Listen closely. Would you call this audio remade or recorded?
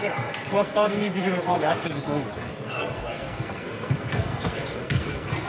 remade